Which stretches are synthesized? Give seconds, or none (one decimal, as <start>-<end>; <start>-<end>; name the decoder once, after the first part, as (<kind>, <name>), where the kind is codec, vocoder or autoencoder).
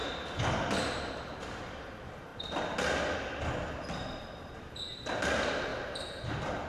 0.0-2.3 (vocoder, BigVGAN v2); 4.9-5.7; 6.3-6.7